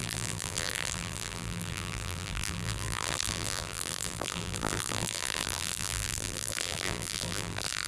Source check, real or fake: fake